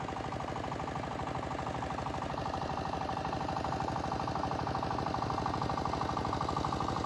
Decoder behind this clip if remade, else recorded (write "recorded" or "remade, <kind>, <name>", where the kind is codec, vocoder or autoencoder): recorded